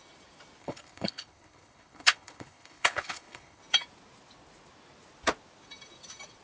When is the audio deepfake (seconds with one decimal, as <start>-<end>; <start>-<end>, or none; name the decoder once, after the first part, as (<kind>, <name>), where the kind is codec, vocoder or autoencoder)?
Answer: 0.6-3.6 (codec, HILCodec)